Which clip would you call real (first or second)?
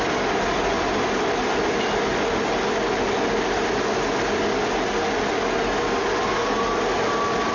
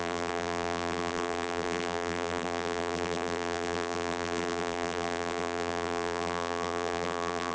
first